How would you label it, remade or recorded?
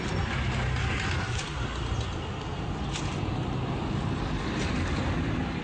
recorded